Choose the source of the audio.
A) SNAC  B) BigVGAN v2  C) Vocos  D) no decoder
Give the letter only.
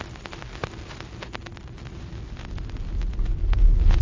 D